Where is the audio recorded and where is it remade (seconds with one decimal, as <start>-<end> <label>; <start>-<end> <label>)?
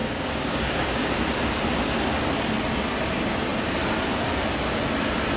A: 0.0-1.2 remade; 1.2-5.4 recorded